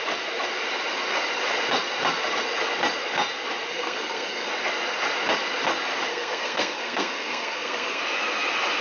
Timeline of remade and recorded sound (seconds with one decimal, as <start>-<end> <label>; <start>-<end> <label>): 0.0-3.7 recorded; 3.7-4.5 remade; 4.5-6.1 recorded; 6.1-8.0 remade; 8.0-8.8 recorded